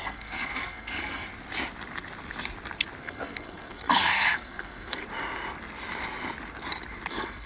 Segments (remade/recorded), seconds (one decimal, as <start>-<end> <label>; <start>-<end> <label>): 0.0-1.3 remade; 1.3-3.0 recorded; 3.0-5.0 remade; 5.0-7.1 recorded; 7.1-7.5 remade